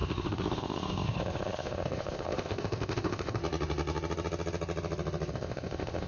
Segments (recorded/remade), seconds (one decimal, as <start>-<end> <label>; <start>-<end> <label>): 0.0-3.4 remade; 3.4-5.3 recorded; 5.3-6.1 remade